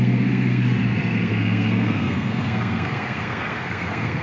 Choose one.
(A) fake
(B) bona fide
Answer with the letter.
A